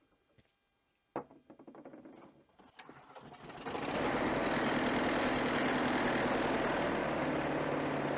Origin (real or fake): real